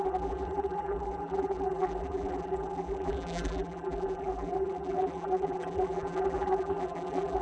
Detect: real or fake fake